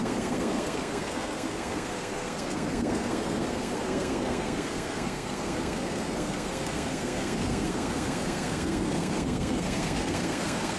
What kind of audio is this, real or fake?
fake